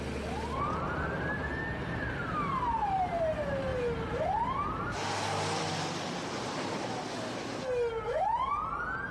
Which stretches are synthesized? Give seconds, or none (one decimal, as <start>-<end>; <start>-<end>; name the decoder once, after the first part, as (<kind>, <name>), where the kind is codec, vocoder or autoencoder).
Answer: none

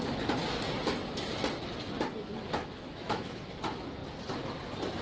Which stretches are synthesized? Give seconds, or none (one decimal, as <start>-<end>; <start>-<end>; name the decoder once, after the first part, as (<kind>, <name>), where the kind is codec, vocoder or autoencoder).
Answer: 2.6-3.5 (autoencoder, DAC-VAE)

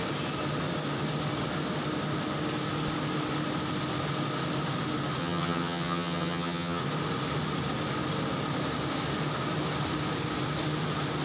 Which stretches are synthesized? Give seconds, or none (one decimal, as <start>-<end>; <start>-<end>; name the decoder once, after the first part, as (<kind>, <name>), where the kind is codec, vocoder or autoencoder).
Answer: 5.2-6.8 (vocoder, HiFi-GAN)

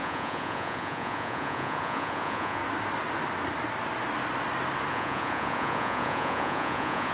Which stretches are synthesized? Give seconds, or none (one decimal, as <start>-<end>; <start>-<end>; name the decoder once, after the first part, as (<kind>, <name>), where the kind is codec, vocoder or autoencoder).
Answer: 0.0-2.6 (vocoder, Vocos); 4.9-7.1

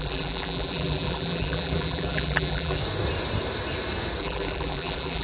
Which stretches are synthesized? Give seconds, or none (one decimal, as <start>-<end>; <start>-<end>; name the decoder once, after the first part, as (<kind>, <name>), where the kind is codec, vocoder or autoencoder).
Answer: 0.0-2.8 (vocoder, BigVGAN v2); 4.2-5.2